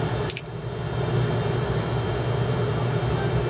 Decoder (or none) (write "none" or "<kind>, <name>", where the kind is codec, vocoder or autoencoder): none